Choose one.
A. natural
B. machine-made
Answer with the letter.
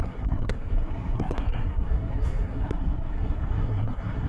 B